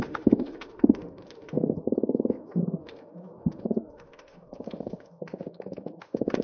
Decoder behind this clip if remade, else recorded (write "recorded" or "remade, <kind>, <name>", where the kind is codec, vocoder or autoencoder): remade, autoencoder, DAC-VAE